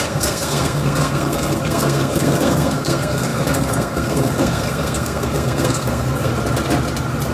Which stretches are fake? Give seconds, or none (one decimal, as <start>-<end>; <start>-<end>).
0.0-6.3